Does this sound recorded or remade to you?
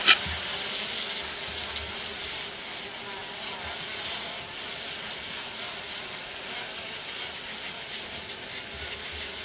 recorded